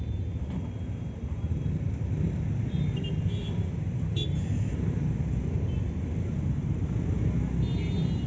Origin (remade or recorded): recorded